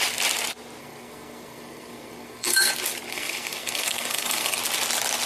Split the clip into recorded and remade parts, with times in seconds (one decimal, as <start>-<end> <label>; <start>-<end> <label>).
0.0-0.8 recorded; 0.8-2.7 remade; 2.7-3.1 recorded; 3.1-4.6 remade; 4.6-5.3 recorded